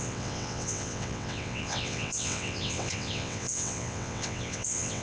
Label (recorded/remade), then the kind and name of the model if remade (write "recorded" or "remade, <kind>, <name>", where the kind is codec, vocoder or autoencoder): remade, vocoder, WaveNeXt